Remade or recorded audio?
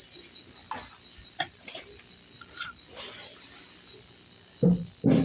recorded